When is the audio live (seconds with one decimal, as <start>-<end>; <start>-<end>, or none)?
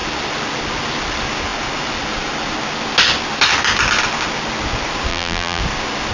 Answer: 0.0-5.1; 5.6-6.1